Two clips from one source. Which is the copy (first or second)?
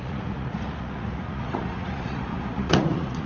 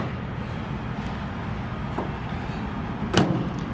first